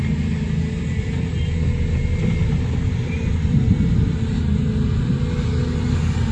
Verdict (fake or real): real